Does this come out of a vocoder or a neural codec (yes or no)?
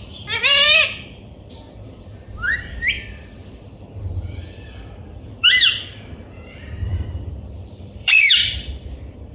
yes